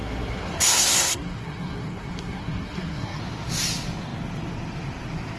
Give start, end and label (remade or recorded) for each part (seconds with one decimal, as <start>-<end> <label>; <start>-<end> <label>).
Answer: 0.0-3.2 remade; 3.2-5.4 recorded